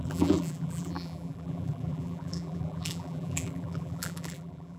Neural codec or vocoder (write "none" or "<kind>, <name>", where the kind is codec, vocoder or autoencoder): vocoder, BigVGAN v2